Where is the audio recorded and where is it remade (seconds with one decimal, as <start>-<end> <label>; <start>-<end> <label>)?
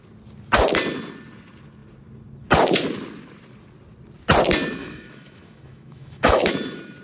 0.0-4.8 recorded; 4.8-6.5 remade; 6.5-7.0 recorded